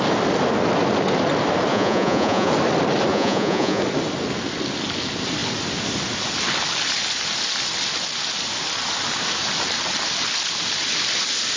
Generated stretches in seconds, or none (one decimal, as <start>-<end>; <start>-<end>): 1.7-2.5; 3.1-3.8